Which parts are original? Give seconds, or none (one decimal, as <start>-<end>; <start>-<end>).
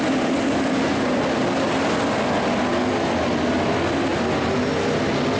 0.0-5.4